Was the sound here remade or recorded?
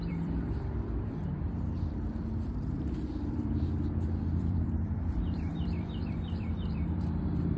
remade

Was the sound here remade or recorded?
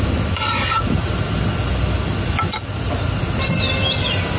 recorded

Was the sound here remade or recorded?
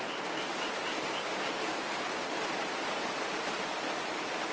recorded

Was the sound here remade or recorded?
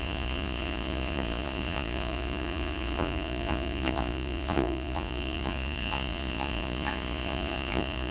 remade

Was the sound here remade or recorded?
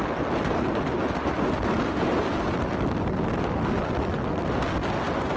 recorded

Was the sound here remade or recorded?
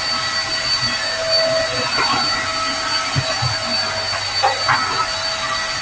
recorded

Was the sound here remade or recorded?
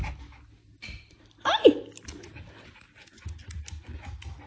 recorded